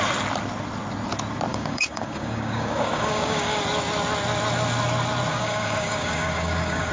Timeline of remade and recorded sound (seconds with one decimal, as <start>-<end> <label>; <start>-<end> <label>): 0.0-1.5 recorded; 1.5-3.6 remade; 3.6-5.3 recorded; 5.3-6.9 remade